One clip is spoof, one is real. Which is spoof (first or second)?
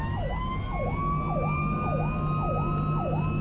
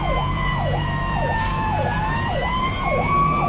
second